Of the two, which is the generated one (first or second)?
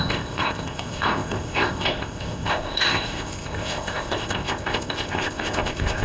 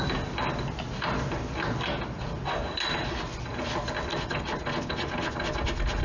first